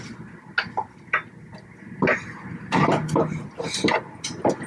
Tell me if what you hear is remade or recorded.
recorded